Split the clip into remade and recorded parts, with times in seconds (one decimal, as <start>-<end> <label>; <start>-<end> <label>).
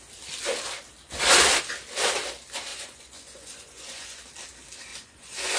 0.0-2.7 recorded; 2.7-4.2 remade; 4.2-4.9 recorded; 4.9-5.6 remade